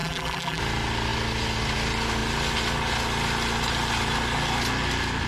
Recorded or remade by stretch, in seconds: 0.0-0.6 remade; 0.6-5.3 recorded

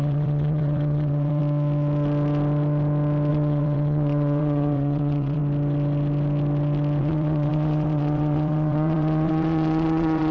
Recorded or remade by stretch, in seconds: 0.0-1.4 remade; 1.4-3.3 recorded; 3.3-5.4 remade; 5.4-7.0 recorded; 7.0-10.3 remade

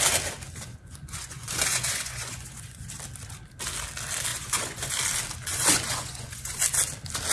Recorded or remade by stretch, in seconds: 0.0-0.7 recorded; 0.7-2.9 remade; 2.9-4.3 recorded; 4.3-4.9 remade; 4.9-5.5 recorded; 5.5-6.6 remade; 6.6-7.3 recorded

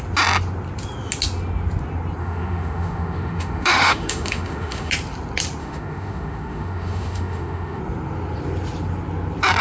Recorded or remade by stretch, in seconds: 0.0-2.2 recorded; 2.2-4.9 remade; 4.9-5.6 recorded; 5.6-7.8 remade; 7.8-9.6 recorded

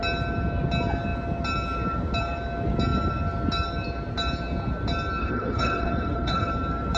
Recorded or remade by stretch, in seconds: 0.0-5.2 recorded; 5.2-6.5 remade; 6.5-7.0 recorded

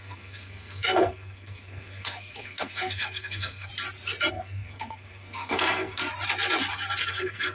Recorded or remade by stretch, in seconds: 0.0-3.7 remade; 3.7-4.3 recorded; 4.3-6.0 remade; 6.0-7.1 recorded; 7.1-7.5 remade